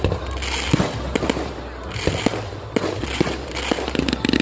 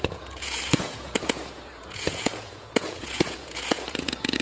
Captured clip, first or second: first